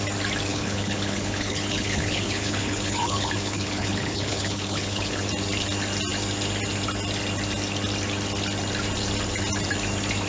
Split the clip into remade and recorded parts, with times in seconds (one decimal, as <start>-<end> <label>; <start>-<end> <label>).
0.0-0.5 recorded; 0.5-5.2 remade; 5.2-10.3 recorded